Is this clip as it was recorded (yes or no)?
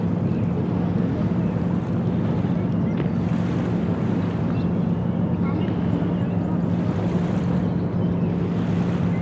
yes